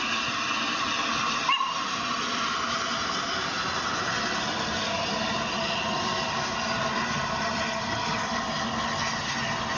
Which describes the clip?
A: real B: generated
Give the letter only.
A